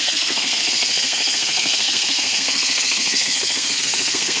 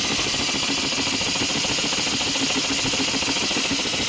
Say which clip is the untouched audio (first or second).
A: second